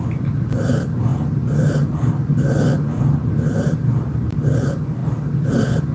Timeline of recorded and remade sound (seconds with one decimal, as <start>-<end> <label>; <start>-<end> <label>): 0.0-5.9 recorded

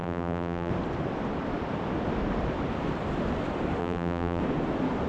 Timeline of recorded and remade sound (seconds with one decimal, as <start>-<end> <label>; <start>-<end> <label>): 0.0-0.7 remade; 0.7-3.8 recorded; 3.8-4.4 remade; 4.4-5.1 recorded

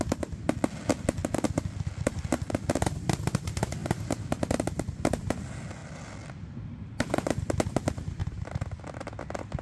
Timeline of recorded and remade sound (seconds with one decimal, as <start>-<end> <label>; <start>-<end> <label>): 0.0-3.8 recorded; 3.8-5.2 remade; 5.2-8.2 recorded; 8.2-8.8 remade; 8.8-9.6 recorded

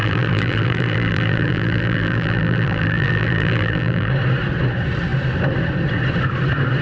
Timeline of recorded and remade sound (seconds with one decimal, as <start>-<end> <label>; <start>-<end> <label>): 0.0-4.1 remade; 4.1-6.8 recorded

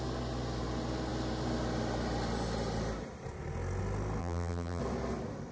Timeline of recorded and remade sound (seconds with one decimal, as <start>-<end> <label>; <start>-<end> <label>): 0.0-4.2 recorded; 4.2-4.8 remade; 4.8-5.5 recorded

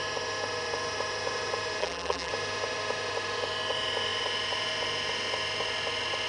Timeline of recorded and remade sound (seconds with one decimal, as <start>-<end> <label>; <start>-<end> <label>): 0.0-1.8 recorded; 1.8-2.3 remade; 2.3-6.3 recorded